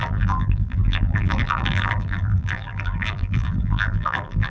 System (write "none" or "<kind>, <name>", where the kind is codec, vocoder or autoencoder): vocoder, BigVGAN v2